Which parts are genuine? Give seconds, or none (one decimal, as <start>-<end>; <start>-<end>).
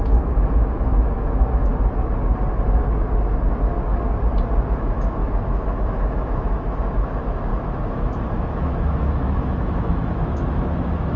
1.7-4.7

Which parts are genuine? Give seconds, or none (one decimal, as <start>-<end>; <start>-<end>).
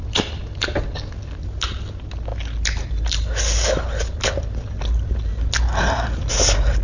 0.0-6.8